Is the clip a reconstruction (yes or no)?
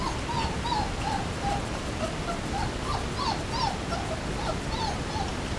no